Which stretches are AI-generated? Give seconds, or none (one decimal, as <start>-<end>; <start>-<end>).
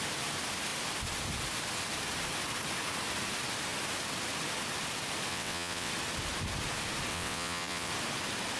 5.3-5.9; 7.1-7.9